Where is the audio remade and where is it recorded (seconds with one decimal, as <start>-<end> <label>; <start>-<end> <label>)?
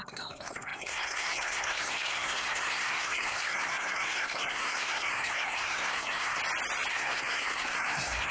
0.0-6.4 remade; 6.4-6.9 recorded; 6.9-8.3 remade